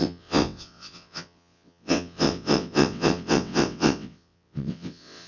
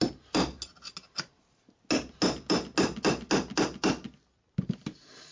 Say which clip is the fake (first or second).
first